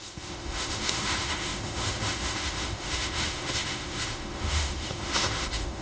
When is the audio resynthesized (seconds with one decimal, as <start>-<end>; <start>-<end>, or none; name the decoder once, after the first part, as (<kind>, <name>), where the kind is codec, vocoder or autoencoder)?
0.0-5.8 (autoencoder, DAC-VAE)